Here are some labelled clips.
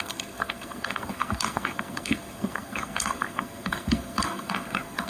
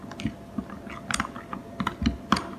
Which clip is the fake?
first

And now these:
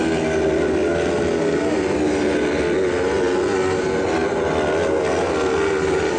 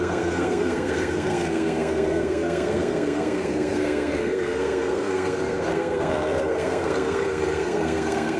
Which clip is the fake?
second